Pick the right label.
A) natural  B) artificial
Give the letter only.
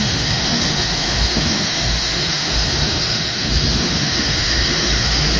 B